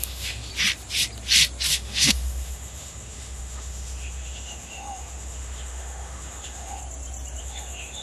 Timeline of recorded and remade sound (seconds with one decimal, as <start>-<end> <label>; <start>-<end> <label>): 0.0-0.5 remade; 0.5-1.7 recorded; 1.7-6.8 remade; 6.8-7.4 recorded; 7.4-8.0 remade